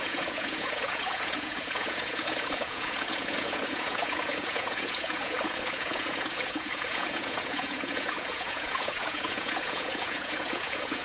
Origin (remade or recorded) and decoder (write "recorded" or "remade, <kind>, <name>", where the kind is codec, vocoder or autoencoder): remade, vocoder, Vocos